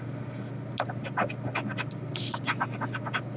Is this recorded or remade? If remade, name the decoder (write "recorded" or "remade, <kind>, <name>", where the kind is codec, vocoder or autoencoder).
recorded